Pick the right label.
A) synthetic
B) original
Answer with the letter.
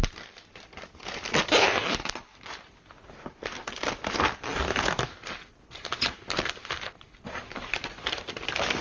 B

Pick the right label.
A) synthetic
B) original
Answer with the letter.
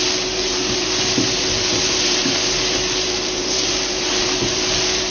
A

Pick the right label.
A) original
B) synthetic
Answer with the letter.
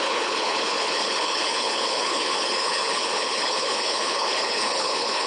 B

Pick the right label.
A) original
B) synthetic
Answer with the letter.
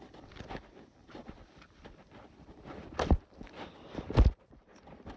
B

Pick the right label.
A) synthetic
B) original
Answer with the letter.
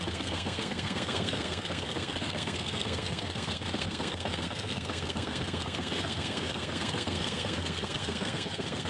A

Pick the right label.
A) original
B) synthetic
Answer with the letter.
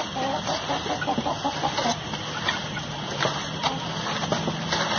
A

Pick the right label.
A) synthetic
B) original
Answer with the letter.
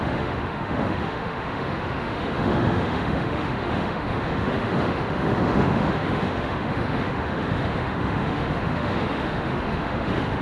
A